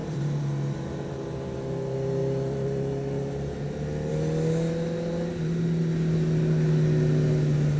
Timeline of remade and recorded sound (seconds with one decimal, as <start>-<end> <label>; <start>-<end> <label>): 0.0-0.8 remade; 0.8-7.8 recorded